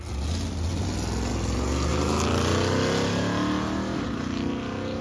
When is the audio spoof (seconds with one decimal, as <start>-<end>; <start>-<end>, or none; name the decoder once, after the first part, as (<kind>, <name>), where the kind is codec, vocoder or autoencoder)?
none